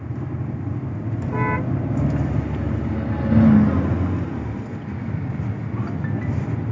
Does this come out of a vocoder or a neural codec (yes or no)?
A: no